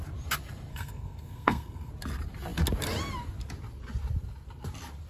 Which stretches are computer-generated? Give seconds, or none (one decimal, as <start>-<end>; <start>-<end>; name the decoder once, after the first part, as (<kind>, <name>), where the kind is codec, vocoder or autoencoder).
0.7-1.9 (codec, SNAC)